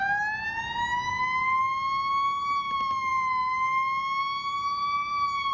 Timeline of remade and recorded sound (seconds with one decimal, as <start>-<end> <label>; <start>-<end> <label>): 0.0-5.5 recorded